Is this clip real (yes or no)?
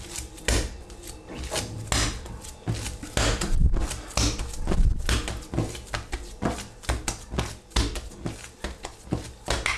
yes